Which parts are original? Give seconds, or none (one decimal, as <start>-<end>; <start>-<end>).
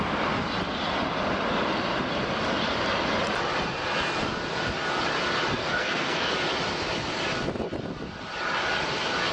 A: 0.0-5.6; 6.3-9.3